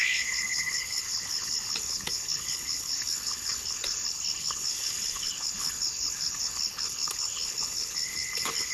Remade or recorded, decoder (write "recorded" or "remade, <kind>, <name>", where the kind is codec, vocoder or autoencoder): remade, codec, HILCodec